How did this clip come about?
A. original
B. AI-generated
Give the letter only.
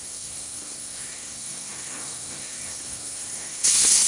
B